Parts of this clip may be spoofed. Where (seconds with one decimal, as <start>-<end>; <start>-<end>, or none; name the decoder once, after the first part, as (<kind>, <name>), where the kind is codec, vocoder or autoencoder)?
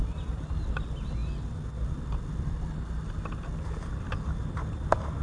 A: none